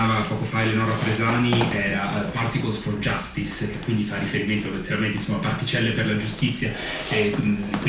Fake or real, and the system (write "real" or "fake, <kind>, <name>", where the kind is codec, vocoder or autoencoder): real